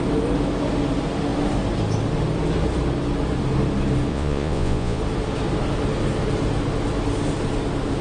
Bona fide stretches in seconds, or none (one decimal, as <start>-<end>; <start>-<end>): 0.0-4.1; 5.0-8.0